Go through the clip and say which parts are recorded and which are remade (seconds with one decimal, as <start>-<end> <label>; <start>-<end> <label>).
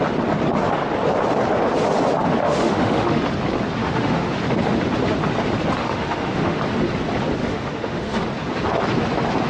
0.0-2.4 recorded; 2.4-3.2 remade; 3.2-3.8 recorded; 3.8-4.3 remade; 4.3-5.8 recorded; 5.8-6.6 remade; 6.6-7.4 recorded; 7.4-8.2 remade; 8.2-9.5 recorded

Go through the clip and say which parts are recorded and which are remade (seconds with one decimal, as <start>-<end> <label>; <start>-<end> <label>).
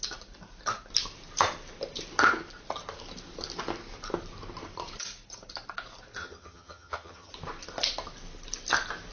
0.0-6.2 recorded; 6.2-7.3 remade; 7.3-9.1 recorded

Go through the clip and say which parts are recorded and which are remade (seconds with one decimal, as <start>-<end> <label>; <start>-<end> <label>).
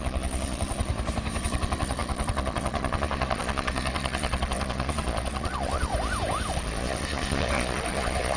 0.0-0.9 remade; 0.9-1.4 recorded; 1.4-5.9 remade; 5.9-6.5 recorded; 6.5-8.4 remade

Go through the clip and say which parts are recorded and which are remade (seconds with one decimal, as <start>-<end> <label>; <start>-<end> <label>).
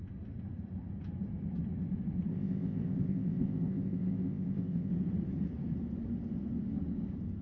0.0-2.3 recorded; 2.3-4.9 remade; 4.9-7.4 recorded